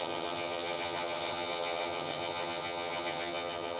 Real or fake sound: fake